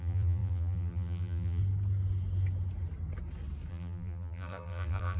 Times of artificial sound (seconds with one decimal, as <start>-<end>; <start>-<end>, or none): 0.0-1.6; 3.7-5.2